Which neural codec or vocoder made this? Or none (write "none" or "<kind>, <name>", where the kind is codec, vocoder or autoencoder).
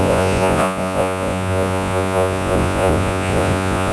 vocoder, Vocos